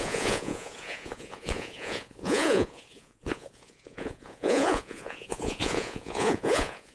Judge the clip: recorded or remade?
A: remade